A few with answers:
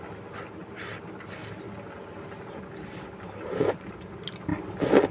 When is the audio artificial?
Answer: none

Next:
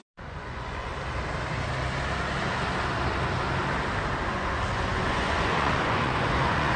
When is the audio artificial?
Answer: 0.0-0.9 (vocoder, Vocos); 4.3-6.8

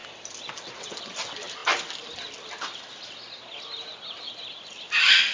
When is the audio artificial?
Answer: none